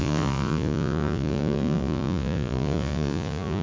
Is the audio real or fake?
fake